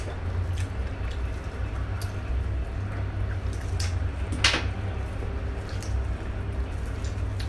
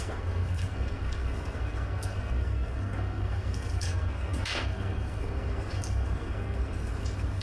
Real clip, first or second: first